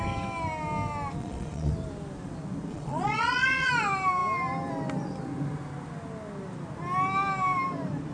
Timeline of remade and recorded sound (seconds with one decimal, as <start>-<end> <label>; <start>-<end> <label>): 0.0-1.2 recorded; 1.2-1.7 remade; 1.7-2.7 recorded; 2.7-3.7 remade; 3.7-8.1 recorded